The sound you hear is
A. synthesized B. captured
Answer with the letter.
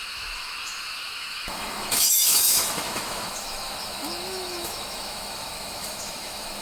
A